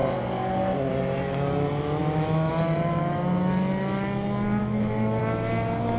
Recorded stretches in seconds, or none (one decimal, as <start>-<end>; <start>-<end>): 0.0-2.0; 2.5-4.6; 5.2-6.0